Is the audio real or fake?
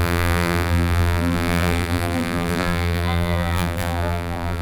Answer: fake